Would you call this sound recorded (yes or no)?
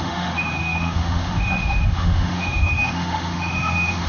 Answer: no